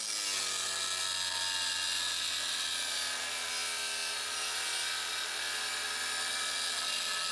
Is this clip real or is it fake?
real